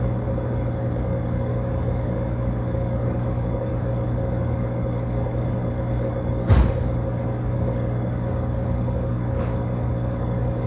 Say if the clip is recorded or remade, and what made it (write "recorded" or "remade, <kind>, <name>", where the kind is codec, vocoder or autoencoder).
remade, codec, DAC